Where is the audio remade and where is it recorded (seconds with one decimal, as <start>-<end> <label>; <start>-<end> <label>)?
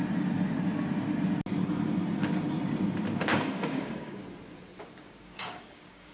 0.0-3.2 recorded; 3.2-4.2 remade; 4.2-4.8 recorded; 4.8-6.1 remade